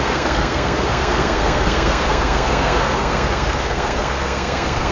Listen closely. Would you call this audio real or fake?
fake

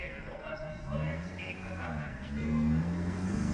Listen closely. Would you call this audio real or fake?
fake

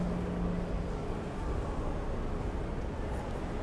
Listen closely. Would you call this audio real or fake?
real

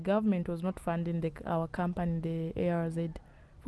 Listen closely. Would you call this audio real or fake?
real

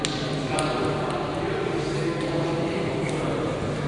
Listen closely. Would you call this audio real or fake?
real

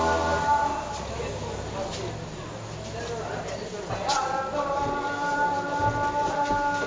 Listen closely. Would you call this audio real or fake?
real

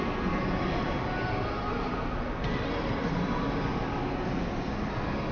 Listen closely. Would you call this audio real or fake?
real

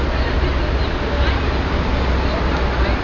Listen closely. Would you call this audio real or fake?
real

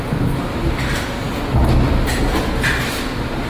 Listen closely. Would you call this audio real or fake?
real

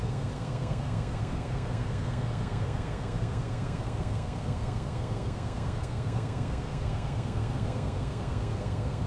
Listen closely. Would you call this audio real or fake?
fake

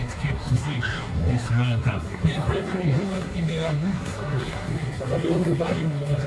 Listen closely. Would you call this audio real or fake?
fake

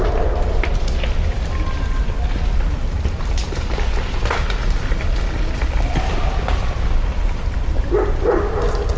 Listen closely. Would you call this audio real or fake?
real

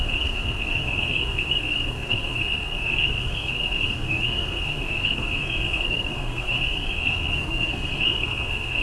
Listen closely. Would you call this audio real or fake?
fake